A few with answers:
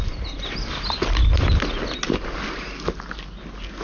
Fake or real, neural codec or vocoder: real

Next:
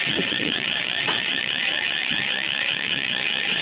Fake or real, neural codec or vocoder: fake, vocoder, WaveNeXt